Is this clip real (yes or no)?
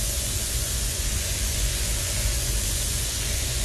no